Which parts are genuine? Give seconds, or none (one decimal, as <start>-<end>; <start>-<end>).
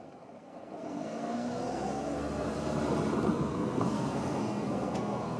2.5-3.3